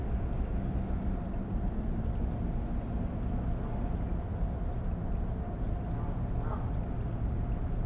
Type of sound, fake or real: real